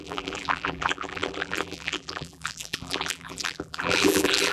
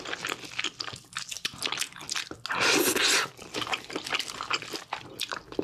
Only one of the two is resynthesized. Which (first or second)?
first